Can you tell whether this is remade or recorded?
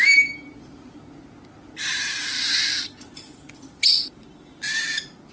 recorded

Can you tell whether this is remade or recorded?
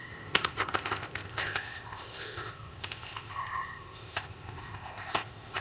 remade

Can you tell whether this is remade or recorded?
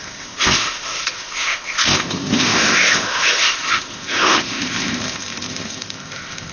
remade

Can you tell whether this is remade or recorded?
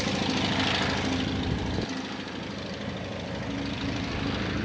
recorded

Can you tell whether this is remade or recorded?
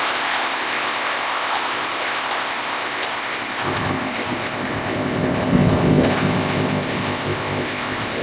remade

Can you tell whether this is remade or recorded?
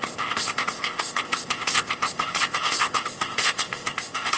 remade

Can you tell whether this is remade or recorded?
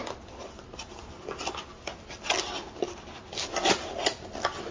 recorded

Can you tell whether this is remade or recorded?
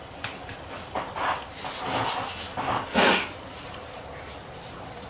recorded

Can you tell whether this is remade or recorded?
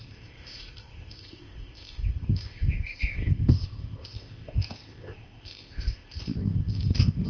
remade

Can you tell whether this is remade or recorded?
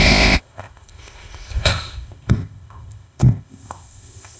remade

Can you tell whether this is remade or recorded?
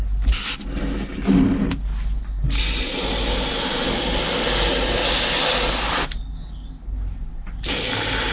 recorded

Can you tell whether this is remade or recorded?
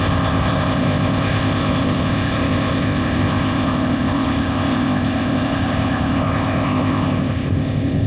remade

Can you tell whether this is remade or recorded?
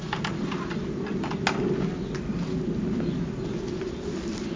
recorded